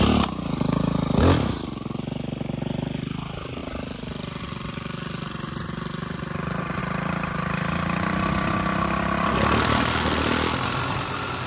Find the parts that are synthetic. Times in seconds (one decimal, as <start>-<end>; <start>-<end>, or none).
none